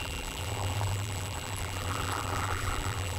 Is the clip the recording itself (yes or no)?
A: no